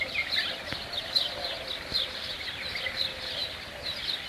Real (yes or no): yes